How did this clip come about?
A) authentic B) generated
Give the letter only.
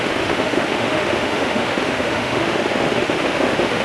B